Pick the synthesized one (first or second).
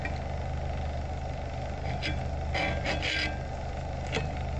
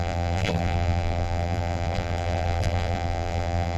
second